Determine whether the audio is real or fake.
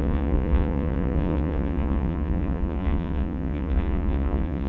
fake